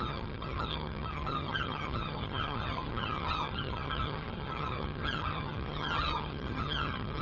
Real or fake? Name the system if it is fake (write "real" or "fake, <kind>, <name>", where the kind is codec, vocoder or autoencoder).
fake, vocoder, HiFi-GAN